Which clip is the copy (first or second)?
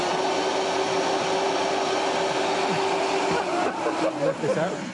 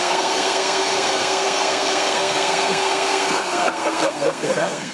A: second